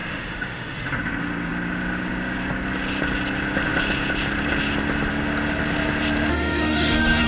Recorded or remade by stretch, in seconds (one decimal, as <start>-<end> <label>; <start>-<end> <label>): 0.0-0.9 remade; 0.9-6.3 recorded; 6.3-7.3 remade